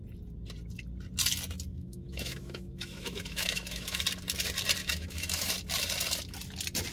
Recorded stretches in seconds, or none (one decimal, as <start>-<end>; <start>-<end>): 0.0-1.7; 4.0-4.8; 5.5-6.9